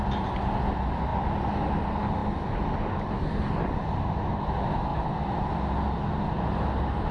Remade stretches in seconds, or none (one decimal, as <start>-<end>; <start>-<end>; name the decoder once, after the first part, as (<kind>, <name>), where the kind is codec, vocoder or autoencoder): 4.9-5.5 (vocoder, BigVGAN v2)